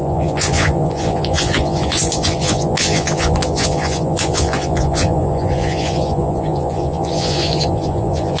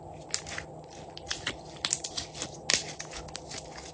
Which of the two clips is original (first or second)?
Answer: second